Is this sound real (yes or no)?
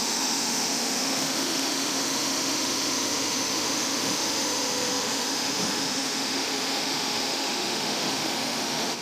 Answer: no